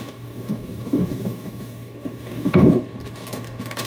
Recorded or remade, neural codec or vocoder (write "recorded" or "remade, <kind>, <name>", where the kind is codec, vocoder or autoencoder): remade, codec, DAC